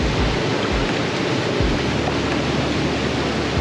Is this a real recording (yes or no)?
yes